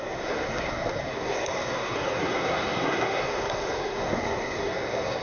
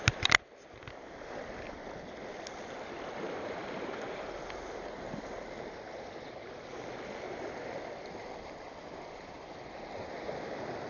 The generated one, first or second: first